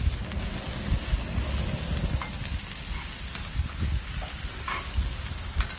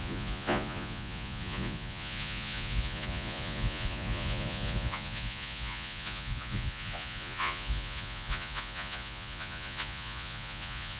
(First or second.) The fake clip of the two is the second